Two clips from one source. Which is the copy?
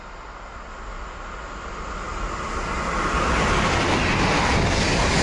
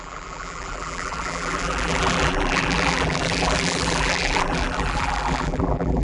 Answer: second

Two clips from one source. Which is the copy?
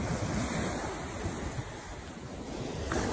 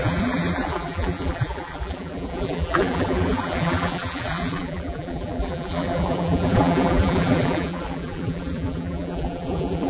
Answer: second